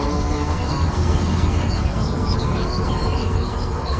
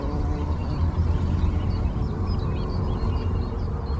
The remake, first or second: first